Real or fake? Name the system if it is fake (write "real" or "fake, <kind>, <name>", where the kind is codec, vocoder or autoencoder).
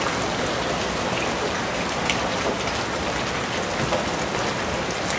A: real